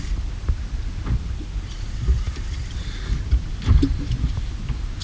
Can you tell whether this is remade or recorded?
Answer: recorded